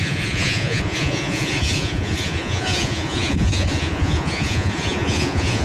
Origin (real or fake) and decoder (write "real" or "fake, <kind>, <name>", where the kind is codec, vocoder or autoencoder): fake, vocoder, Vocos